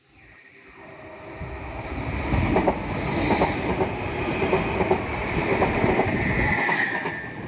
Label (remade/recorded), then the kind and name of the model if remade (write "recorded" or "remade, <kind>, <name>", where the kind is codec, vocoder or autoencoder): recorded